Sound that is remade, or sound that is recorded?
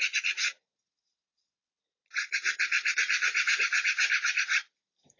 recorded